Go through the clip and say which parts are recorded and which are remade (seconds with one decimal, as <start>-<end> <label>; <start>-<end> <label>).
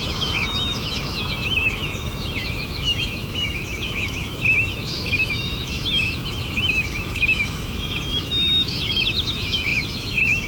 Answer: 0.0-10.5 remade